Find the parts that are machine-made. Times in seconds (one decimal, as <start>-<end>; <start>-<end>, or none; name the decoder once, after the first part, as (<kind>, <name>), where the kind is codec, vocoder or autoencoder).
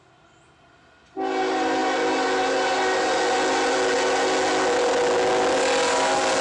none